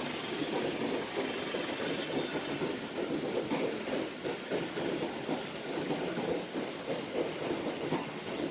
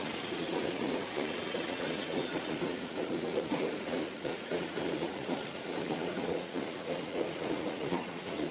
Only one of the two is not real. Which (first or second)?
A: second